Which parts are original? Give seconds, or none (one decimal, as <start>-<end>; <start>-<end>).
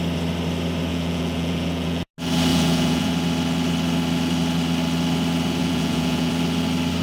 0.0-0.9; 2.1-2.5; 3.1-5.6; 6.3-7.0